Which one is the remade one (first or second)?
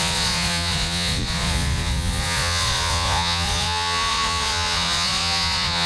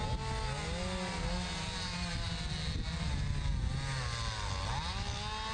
first